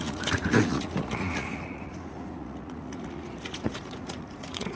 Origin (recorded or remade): remade